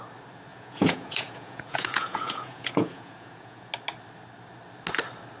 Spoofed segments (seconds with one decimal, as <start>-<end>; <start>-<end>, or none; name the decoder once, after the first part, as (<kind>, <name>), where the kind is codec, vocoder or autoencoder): 0.5-3.7 (vocoder, Vocos)